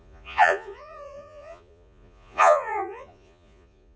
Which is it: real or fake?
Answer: fake